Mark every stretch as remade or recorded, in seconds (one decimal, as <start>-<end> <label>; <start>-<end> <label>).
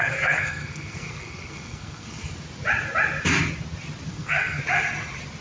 0.0-2.3 remade; 2.3-4.1 recorded; 4.1-4.6 remade; 4.6-5.4 recorded